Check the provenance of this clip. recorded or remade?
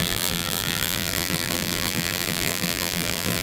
remade